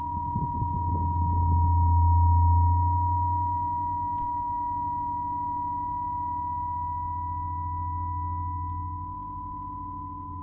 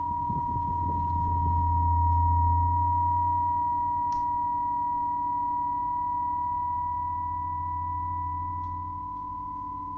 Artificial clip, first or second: first